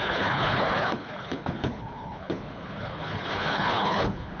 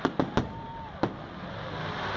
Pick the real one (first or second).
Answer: second